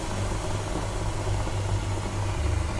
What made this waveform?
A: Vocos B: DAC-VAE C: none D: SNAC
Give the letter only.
C